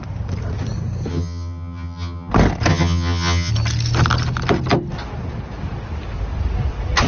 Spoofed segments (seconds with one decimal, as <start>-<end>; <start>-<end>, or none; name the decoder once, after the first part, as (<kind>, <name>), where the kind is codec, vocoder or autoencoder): 1.1-2.3 (vocoder, HiFi-GAN); 2.7-3.5